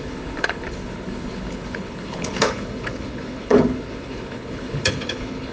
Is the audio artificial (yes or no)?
yes